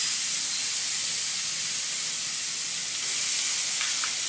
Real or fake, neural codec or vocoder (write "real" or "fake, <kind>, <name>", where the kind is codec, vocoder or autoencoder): real